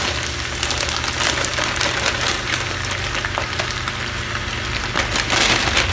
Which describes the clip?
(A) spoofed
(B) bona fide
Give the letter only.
B